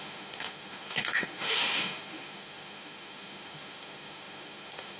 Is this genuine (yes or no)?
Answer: no